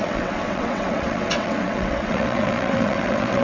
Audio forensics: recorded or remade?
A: remade